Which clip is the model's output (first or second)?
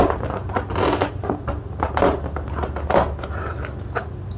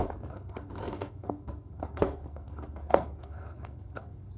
second